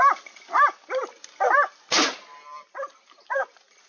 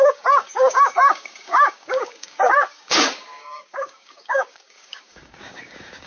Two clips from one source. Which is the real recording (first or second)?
first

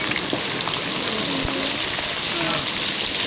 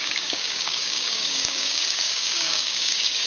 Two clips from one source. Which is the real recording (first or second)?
first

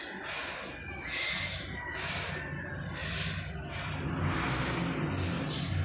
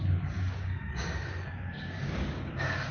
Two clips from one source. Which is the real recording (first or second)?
first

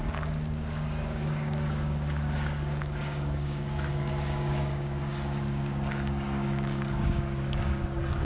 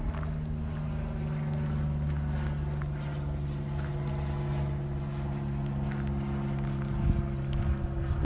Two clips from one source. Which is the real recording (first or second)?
second